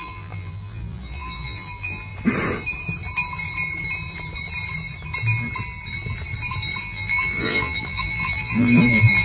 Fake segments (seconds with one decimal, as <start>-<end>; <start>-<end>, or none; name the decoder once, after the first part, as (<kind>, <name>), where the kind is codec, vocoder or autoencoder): 0.0-2.1 (vocoder, BigVGAN v2); 6.8-9.2